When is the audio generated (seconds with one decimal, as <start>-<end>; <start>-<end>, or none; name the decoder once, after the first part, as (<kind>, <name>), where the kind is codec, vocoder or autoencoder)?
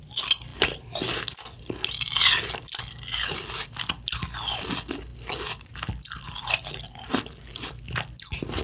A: none